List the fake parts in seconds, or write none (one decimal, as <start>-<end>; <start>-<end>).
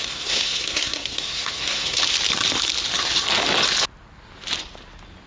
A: 0.0-2.0